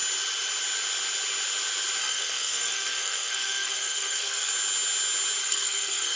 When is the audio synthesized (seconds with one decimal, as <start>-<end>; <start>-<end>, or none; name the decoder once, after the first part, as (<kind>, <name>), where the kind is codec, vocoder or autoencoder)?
2.0-4.5 (codec, SNAC); 5.4-6.2